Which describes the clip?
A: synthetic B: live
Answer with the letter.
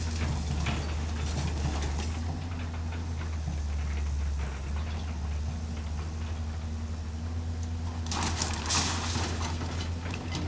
B